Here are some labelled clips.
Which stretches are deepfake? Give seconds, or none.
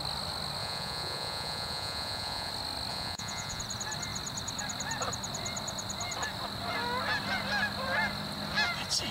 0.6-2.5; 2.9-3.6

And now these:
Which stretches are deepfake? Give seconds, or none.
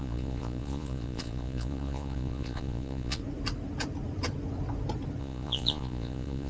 0.0-3.2; 5.2-6.5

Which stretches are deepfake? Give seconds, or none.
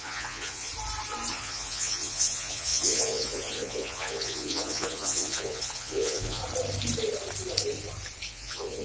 0.0-0.7; 1.3-6.4; 8.3-8.8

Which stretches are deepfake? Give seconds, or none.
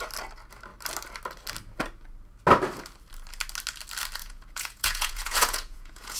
4.2-6.2